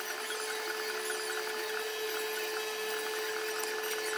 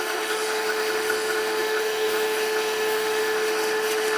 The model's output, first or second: second